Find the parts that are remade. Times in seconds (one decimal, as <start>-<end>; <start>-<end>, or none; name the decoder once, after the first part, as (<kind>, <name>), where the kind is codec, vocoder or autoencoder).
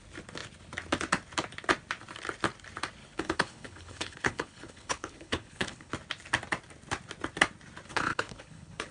3.0-5.9 (codec, HILCodec); 7.9-8.9